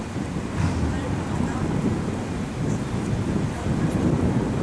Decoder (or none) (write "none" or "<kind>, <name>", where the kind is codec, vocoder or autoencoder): none